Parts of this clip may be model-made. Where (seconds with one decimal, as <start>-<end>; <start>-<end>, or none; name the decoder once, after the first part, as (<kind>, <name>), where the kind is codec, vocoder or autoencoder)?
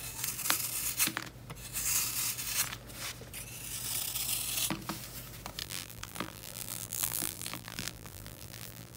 5.6-9.0 (vocoder, BigVGAN v2)